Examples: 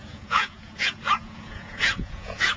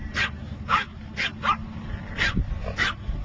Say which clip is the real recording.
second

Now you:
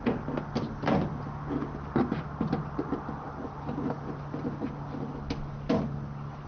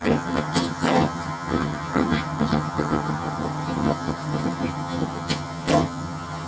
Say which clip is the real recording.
first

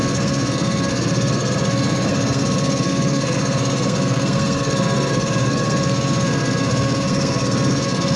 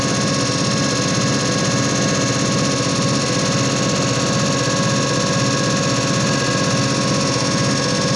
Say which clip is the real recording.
second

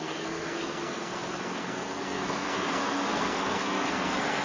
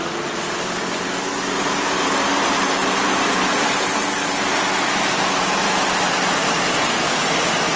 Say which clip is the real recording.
second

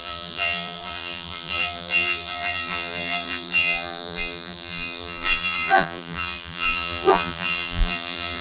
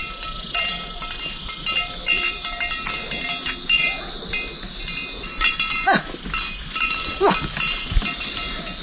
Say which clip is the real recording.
second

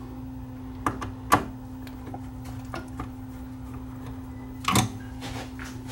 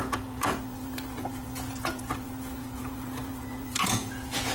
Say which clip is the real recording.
first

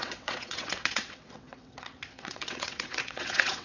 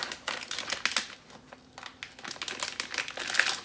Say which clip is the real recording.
second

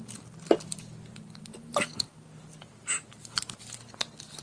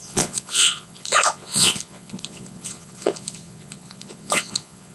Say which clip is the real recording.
first